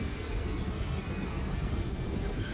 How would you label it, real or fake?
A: fake